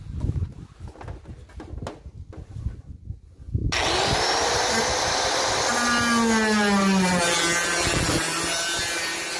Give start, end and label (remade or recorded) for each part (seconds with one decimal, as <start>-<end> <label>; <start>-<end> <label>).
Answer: 0.0-9.4 recorded